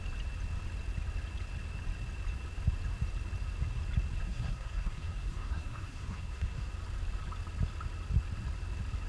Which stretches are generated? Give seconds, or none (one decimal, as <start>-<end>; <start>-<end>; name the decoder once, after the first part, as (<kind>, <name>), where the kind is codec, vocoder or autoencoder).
4.2-6.7 (codec, SNAC)